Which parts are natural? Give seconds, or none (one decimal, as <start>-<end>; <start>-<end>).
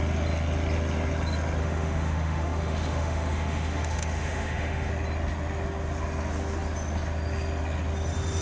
0.0-1.6; 4.9-8.4